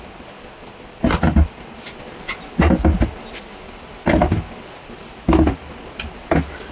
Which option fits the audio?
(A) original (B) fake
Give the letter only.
A